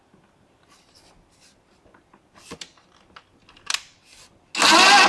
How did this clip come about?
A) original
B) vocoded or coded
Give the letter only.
A